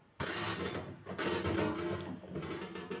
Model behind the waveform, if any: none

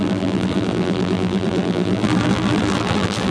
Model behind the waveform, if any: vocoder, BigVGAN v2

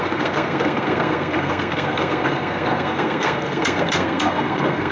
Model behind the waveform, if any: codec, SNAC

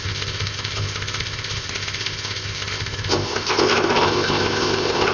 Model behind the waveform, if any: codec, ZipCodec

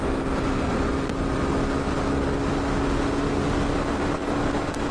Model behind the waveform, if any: none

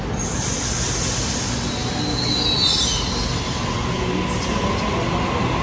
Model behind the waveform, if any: none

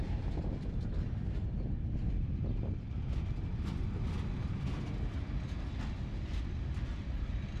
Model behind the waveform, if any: none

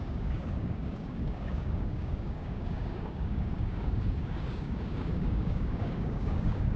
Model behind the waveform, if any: codec, DAC